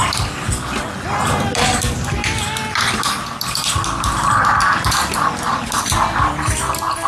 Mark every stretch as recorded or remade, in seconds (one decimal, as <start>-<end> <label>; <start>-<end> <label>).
0.0-7.1 recorded